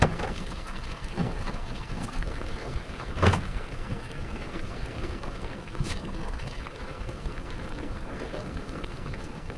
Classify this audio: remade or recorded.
remade